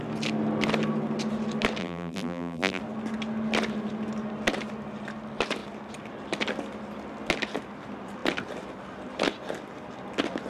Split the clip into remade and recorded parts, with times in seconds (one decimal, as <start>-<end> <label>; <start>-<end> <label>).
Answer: 0.0-1.8 recorded; 1.8-2.8 remade; 2.8-10.5 recorded